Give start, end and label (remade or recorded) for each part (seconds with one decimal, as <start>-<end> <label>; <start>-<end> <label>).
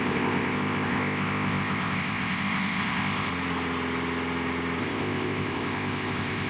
0.0-3.3 remade; 3.3-4.8 recorded; 4.8-6.5 remade